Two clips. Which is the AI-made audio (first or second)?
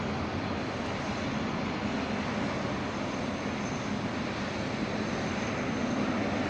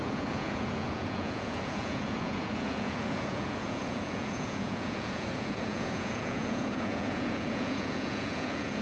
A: second